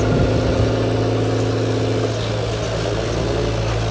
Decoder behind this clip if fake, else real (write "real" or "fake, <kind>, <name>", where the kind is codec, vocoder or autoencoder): real